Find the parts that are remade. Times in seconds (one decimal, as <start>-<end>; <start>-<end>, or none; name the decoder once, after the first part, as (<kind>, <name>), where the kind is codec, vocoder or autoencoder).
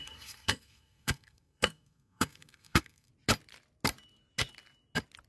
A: 0.0-3.1 (codec, SNAC)